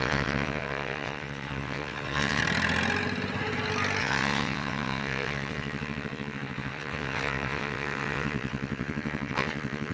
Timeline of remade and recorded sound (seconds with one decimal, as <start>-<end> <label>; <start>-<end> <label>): 0.0-2.4 remade; 2.4-4.0 recorded; 4.0-9.9 remade